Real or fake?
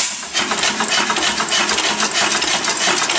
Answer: real